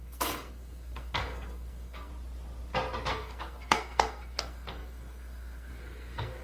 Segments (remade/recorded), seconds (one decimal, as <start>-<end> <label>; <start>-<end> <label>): 0.0-2.1 remade; 2.1-3.1 recorded; 3.1-6.4 remade